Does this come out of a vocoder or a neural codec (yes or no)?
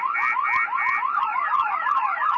no